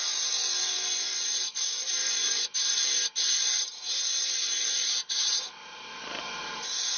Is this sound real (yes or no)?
no